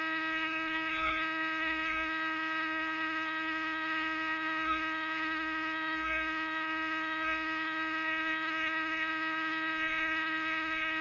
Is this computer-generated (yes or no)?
yes